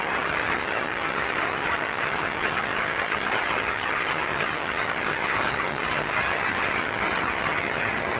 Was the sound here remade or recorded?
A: remade